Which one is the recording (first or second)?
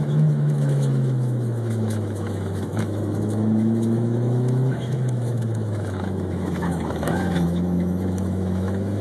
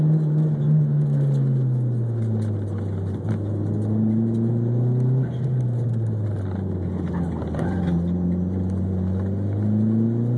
second